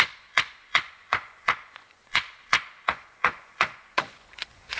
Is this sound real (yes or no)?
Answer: no